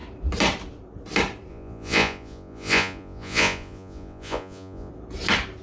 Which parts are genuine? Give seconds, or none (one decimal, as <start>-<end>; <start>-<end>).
0.0-1.5; 4.9-5.6